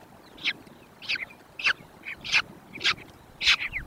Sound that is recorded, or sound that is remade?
recorded